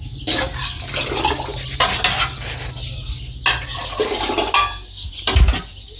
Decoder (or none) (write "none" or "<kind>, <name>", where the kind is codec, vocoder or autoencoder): none